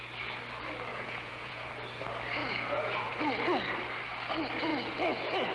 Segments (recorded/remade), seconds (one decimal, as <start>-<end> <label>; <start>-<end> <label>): 0.0-0.9 recorded; 0.9-1.7 remade; 1.7-2.4 recorded; 2.4-3.2 remade; 3.2-5.5 recorded